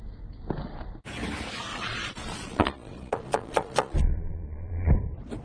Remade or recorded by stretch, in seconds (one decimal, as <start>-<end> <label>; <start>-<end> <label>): 0.0-1.7 recorded; 1.7-4.9 remade; 4.9-5.4 recorded